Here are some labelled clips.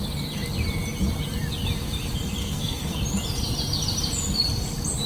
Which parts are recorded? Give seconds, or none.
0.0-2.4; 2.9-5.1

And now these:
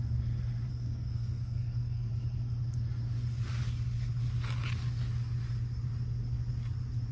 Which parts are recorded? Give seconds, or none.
0.0-0.7; 2.1-7.1